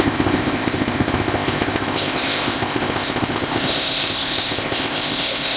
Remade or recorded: remade